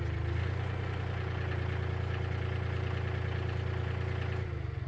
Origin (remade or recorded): recorded